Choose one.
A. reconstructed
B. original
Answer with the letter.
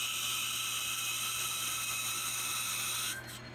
B